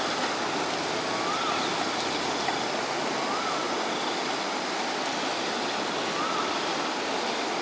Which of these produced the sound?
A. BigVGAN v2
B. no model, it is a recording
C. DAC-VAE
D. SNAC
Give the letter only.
B